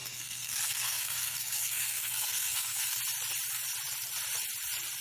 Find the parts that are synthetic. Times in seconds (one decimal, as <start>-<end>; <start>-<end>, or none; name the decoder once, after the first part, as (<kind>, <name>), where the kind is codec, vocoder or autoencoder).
0.0-3.0 (codec, SNAC)